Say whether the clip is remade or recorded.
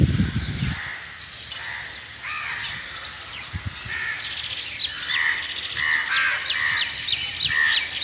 recorded